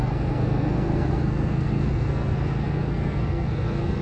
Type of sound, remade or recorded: remade